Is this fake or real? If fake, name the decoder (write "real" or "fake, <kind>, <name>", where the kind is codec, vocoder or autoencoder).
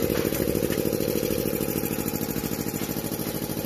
real